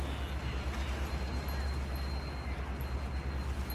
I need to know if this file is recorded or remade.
recorded